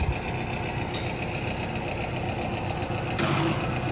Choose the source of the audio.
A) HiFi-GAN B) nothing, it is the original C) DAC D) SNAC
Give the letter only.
B